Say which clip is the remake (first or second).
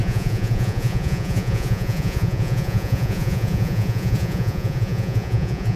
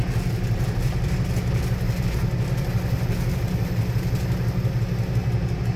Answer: first